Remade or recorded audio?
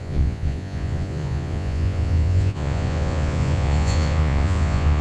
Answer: remade